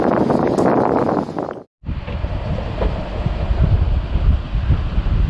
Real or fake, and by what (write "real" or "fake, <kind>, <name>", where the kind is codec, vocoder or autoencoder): real